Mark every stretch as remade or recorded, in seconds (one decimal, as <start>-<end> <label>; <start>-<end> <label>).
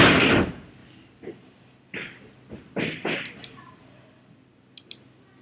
0.0-5.4 recorded